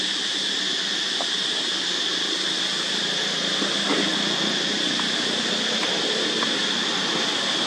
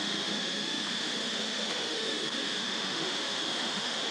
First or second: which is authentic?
first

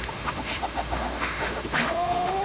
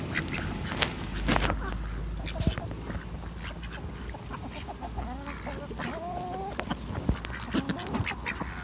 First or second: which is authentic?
second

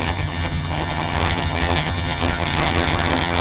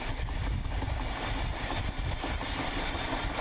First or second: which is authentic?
second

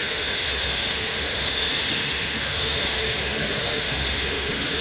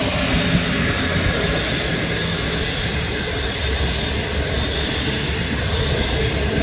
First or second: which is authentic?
second